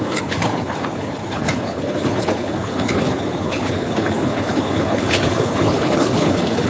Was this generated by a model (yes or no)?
yes